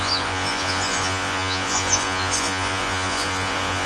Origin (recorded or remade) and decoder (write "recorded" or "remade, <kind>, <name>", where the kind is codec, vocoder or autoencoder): remade, vocoder, Vocos